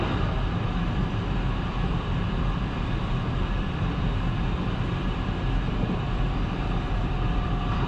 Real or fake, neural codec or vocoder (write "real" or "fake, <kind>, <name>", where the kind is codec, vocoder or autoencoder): fake, vocoder, BigVGAN v2